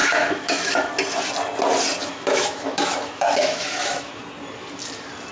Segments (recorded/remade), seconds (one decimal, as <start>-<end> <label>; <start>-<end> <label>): 0.0-0.9 remade; 0.9-2.0 recorded; 2.0-4.2 remade; 4.2-5.3 recorded